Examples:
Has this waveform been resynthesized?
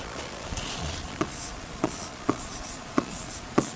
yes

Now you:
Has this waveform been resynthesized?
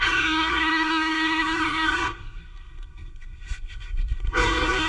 yes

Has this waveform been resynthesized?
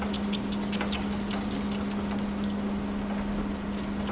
no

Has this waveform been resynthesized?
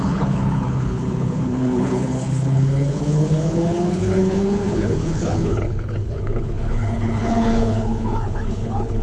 yes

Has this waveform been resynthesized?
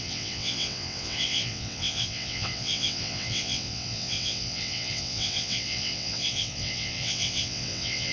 yes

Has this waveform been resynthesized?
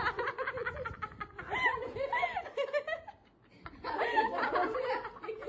no